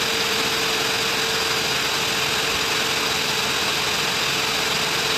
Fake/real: real